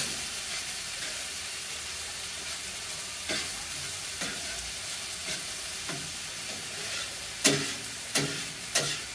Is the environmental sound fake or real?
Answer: real